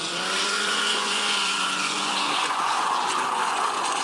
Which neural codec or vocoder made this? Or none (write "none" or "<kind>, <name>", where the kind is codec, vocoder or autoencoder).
vocoder, Vocos